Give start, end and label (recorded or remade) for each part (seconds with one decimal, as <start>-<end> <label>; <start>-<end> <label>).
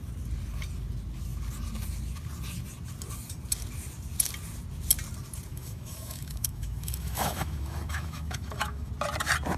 0.0-5.5 recorded; 5.5-8.9 remade; 8.9-9.6 recorded